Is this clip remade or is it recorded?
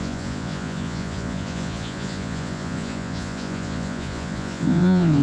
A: remade